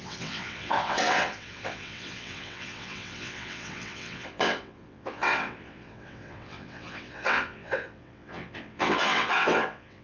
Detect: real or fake fake